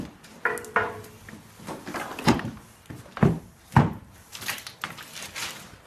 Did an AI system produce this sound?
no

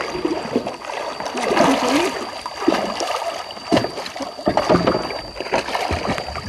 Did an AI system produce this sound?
no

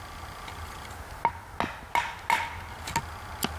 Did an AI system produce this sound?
no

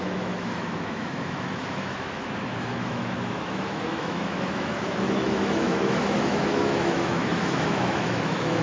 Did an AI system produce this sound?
yes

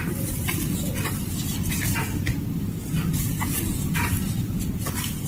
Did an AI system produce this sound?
no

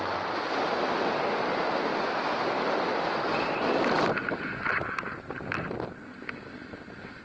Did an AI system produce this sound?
no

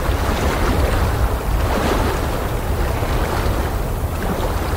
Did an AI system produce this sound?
no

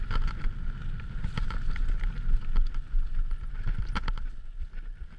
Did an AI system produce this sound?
no